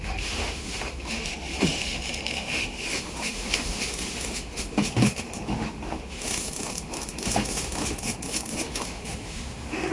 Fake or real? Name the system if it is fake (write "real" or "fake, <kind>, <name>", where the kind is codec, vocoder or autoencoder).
fake, autoencoder, DAC-VAE